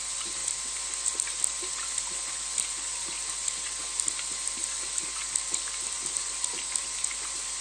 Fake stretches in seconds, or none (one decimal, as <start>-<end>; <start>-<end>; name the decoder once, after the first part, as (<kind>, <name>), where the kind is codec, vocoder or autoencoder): none